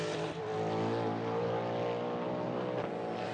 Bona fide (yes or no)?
yes